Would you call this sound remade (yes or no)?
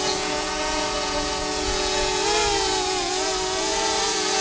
yes